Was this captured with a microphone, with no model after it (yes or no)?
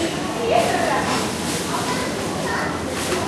yes